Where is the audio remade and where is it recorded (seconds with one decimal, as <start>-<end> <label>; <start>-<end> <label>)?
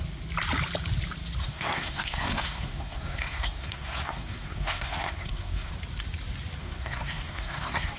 0.0-1.4 recorded; 1.4-5.7 remade; 5.7-6.6 recorded; 6.6-8.0 remade